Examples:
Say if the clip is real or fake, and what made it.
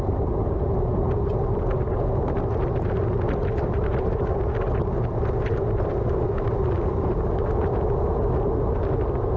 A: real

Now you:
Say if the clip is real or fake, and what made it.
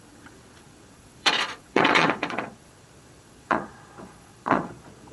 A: fake, vocoder, Vocos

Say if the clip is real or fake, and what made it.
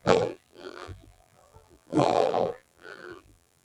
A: fake, vocoder, BigVGAN v2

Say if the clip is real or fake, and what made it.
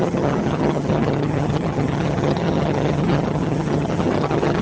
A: fake, vocoder, HiFi-GAN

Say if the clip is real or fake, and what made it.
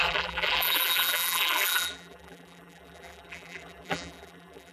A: fake, vocoder, BigVGAN v2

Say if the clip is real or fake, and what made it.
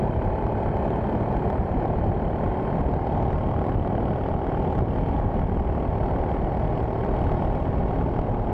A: fake, vocoder, BigVGAN v2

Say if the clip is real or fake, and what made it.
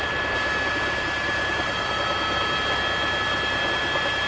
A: real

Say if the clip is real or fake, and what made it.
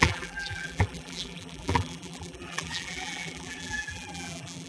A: fake, vocoder, BigVGAN v2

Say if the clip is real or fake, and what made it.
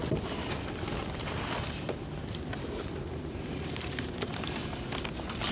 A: real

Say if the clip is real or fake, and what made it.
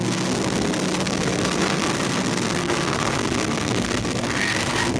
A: fake, codec, SNAC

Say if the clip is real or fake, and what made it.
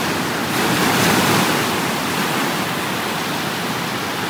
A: real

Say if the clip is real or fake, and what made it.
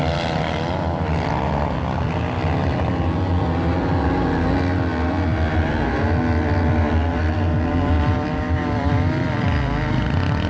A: real